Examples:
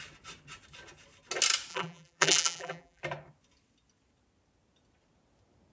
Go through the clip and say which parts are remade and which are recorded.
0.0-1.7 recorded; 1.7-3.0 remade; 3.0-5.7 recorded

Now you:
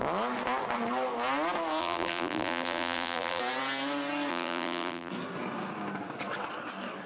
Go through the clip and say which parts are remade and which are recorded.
0.0-1.8 recorded; 1.8-3.4 remade; 3.4-4.3 recorded; 4.3-5.1 remade; 5.1-7.1 recorded

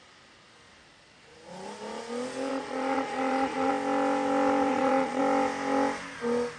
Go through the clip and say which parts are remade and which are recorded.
0.0-2.5 recorded; 2.5-3.7 remade; 3.7-4.7 recorded; 4.7-5.2 remade; 5.2-6.6 recorded

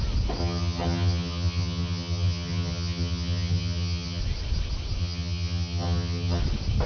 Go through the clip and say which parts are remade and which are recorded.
0.0-0.4 recorded; 0.4-4.2 remade; 4.2-5.0 recorded; 5.0-6.4 remade; 6.4-6.9 recorded

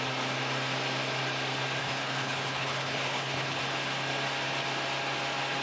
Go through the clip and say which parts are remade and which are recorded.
0.0-1.8 recorded; 1.8-3.6 remade; 3.6-5.6 recorded

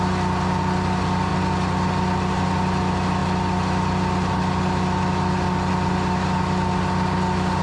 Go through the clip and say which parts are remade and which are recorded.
0.0-7.6 recorded

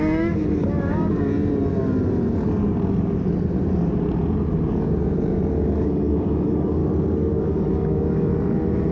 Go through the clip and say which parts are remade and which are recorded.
0.0-1.3 remade; 1.3-5.5 recorded; 5.5-6.8 remade; 6.8-7.3 recorded; 7.3-8.3 remade; 8.3-8.9 recorded

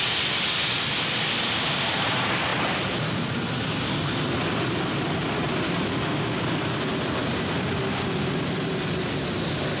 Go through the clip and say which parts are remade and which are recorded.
0.0-9.8 recorded